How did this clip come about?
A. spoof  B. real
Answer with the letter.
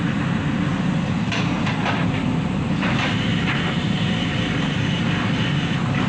A